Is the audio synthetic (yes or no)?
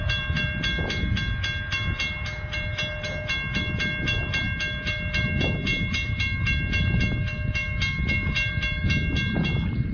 no